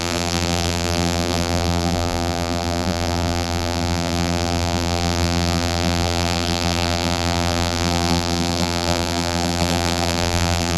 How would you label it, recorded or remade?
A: remade